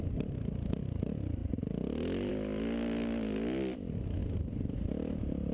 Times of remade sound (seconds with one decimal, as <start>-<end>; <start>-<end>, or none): none